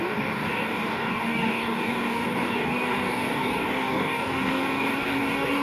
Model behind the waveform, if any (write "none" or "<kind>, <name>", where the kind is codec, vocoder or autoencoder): codec, DAC